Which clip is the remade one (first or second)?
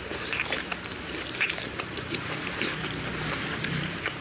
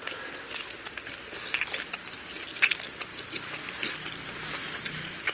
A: first